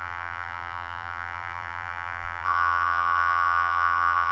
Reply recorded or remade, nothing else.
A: remade